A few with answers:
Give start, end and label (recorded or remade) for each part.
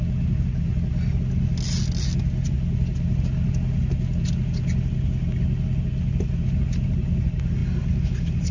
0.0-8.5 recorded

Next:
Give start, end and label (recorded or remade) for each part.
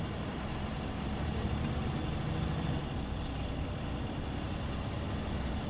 0.0-1.8 remade; 1.8-5.2 recorded; 5.2-5.7 remade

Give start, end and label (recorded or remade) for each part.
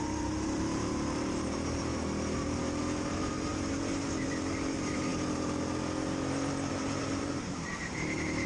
0.0-1.9 remade; 1.9-3.1 recorded; 3.1-5.1 remade; 5.1-6.7 recorded; 6.7-8.5 remade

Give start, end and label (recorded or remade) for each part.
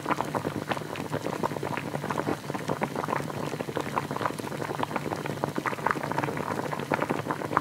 0.0-7.6 recorded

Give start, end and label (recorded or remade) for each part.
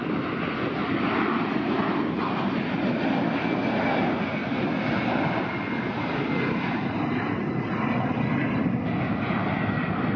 0.0-10.2 recorded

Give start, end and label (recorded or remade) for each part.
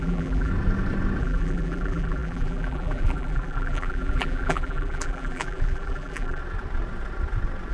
0.0-0.5 remade; 0.5-1.2 recorded; 1.2-6.4 remade; 6.4-7.7 recorded